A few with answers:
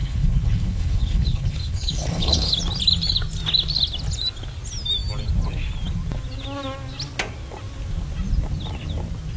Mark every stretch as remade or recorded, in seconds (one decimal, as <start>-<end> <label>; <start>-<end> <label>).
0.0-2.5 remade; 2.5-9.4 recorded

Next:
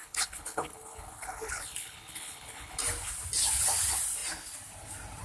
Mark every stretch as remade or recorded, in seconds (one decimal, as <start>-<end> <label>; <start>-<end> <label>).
0.0-2.8 remade; 2.8-5.2 recorded

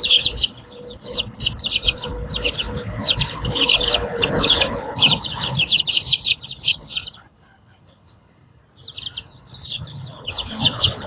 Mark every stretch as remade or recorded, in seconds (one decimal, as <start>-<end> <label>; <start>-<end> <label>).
0.0-8.6 remade; 8.6-9.2 recorded; 9.2-11.1 remade

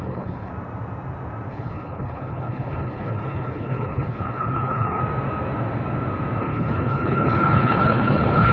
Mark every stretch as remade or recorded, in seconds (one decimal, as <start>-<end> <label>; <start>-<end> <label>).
0.0-0.5 remade; 0.5-1.5 recorded; 1.5-5.0 remade; 5.0-6.4 recorded; 6.4-8.5 remade

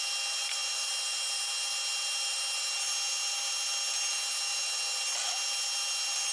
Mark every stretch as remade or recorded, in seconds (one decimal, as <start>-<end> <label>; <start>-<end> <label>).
0.0-6.3 recorded